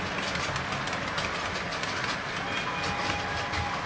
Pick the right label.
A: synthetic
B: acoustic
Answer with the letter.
B